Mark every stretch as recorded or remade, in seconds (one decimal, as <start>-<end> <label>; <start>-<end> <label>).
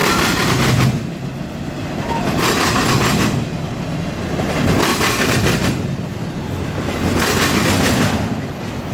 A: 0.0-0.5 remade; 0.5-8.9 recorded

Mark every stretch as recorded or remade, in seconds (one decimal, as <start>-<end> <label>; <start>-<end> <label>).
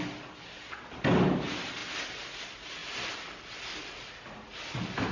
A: 0.0-2.8 recorded; 2.8-4.1 remade; 4.1-5.1 recorded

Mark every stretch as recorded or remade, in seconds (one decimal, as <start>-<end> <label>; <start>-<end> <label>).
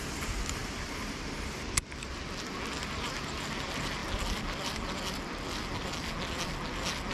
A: 0.0-0.6 recorded; 0.6-2.3 remade; 2.3-7.1 recorded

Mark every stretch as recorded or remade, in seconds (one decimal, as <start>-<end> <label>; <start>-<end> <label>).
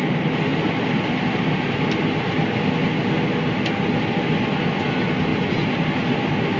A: 0.0-0.5 recorded; 0.5-2.0 remade; 2.0-6.6 recorded